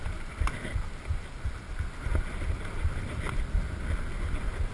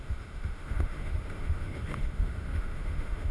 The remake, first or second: second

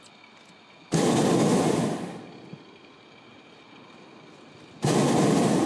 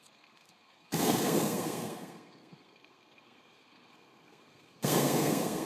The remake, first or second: second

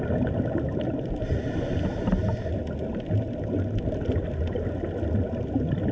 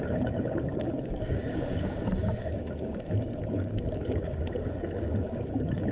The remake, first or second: second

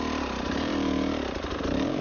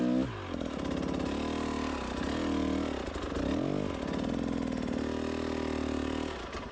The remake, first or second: first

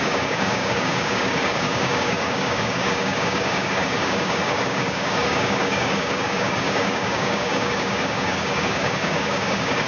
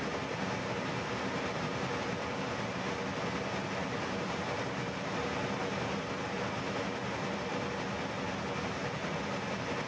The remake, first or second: first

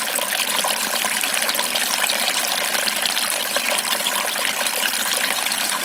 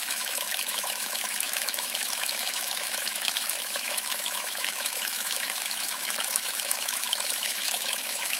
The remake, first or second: second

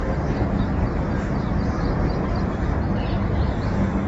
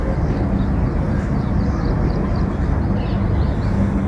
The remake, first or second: first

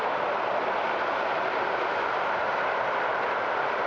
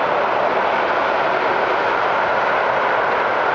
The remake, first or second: first